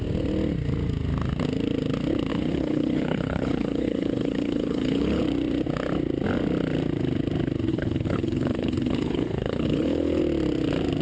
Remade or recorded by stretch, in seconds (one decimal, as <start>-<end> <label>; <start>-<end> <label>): 0.0-2.3 recorded; 2.3-5.2 remade; 5.2-7.7 recorded; 7.7-10.2 remade; 10.2-11.0 recorded